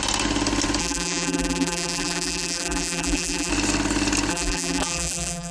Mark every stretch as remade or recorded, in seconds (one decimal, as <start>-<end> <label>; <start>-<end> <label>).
0.0-0.8 recorded; 0.8-3.5 remade; 3.5-4.3 recorded; 4.3-5.5 remade